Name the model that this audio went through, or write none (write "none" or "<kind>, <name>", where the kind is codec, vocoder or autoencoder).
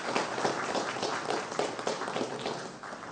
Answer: none